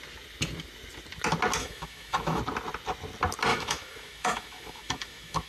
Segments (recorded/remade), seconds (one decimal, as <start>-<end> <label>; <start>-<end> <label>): 0.0-1.6 recorded; 1.6-2.4 remade; 2.4-3.5 recorded; 3.5-5.5 remade